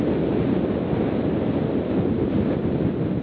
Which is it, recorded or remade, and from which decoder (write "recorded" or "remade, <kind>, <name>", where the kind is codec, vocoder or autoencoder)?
recorded